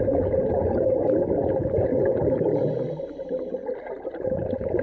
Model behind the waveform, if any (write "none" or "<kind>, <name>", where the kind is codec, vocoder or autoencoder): none